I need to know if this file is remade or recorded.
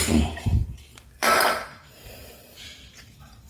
remade